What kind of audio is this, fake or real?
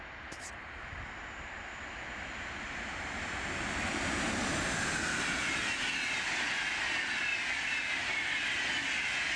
real